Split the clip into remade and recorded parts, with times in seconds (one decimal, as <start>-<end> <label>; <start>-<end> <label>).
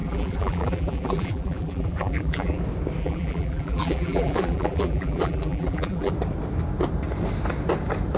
0.0-2.6 remade; 2.6-3.0 recorded; 3.0-6.1 remade; 6.1-8.2 recorded